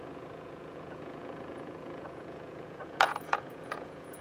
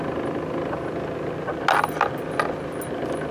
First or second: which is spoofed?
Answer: first